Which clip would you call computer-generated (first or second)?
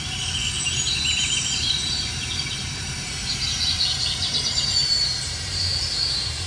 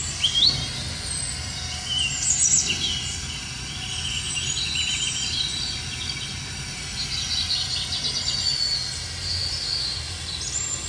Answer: first